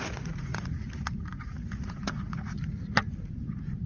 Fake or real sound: fake